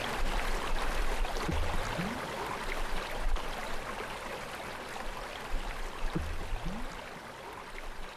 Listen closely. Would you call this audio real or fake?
real